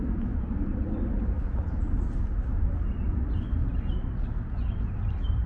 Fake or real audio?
real